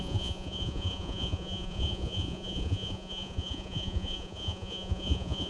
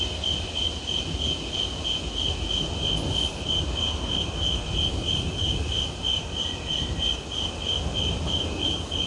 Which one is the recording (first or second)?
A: second